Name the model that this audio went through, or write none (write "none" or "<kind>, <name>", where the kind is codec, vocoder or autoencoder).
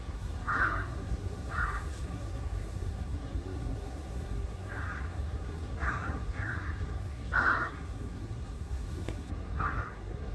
codec, SNAC